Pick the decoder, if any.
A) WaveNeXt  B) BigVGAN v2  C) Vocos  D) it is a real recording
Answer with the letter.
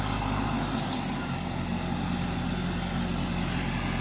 D